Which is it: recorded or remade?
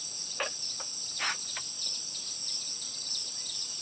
recorded